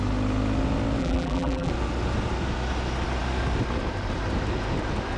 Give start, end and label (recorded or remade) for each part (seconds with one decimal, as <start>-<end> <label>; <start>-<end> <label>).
0.0-1.0 recorded; 1.0-1.7 remade; 1.7-5.2 recorded